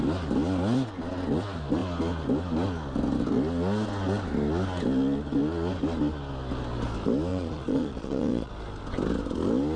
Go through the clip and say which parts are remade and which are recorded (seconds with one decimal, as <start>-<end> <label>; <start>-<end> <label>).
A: 0.0-7.3 recorded; 7.3-8.5 remade; 8.5-9.8 recorded